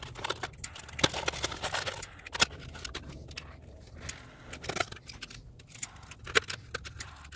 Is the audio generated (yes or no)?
no